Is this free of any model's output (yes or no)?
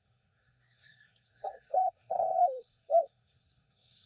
no